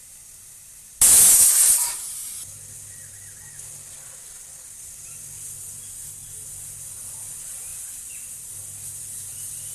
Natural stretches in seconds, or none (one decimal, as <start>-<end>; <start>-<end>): 0.0-1.8; 2.3-9.7